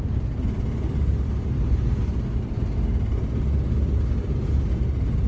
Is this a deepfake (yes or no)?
no